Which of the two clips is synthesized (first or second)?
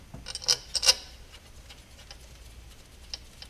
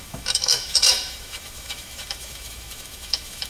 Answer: second